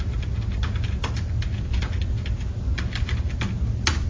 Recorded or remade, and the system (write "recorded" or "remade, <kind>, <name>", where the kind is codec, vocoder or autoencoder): recorded